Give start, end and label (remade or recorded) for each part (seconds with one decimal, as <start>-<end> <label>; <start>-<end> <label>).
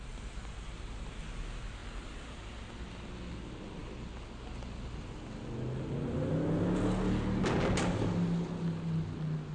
0.0-9.5 recorded